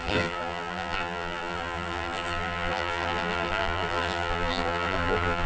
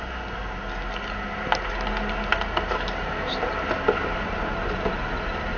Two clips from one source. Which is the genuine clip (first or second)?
second